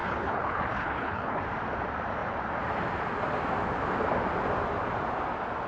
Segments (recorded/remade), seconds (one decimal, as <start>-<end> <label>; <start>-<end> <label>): 0.0-1.4 remade; 1.4-5.7 recorded